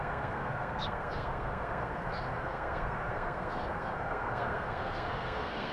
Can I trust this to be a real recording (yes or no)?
no